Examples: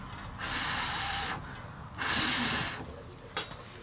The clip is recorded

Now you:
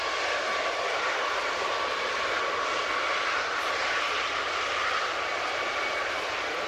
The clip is recorded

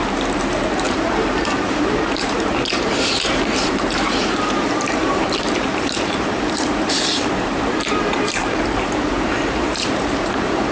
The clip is remade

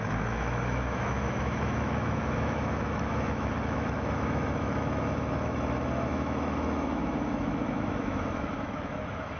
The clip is remade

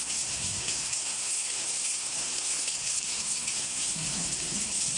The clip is remade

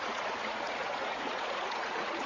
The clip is remade